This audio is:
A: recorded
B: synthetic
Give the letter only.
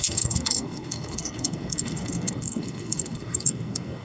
B